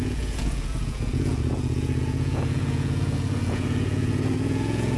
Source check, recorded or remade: remade